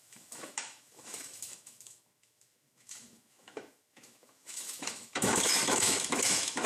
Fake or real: fake